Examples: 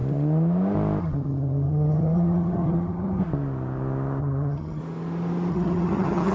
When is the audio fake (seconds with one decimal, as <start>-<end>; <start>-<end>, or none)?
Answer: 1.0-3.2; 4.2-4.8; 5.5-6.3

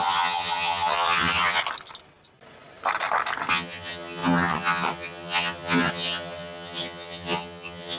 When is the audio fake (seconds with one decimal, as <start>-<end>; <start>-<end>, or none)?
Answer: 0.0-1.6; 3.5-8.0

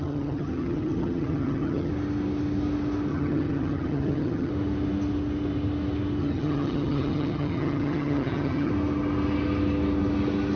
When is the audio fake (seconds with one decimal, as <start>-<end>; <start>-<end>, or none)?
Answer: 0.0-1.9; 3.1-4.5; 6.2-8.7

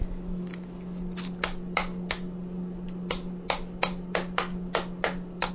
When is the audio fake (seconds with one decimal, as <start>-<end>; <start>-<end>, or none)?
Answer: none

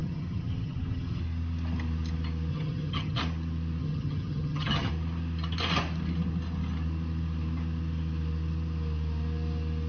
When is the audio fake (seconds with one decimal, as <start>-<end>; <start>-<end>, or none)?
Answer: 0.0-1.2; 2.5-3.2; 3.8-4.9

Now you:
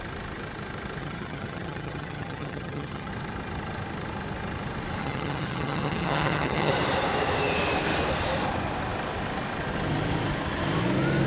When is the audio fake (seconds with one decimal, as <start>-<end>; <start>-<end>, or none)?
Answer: 1.0-3.1; 5.0-6.7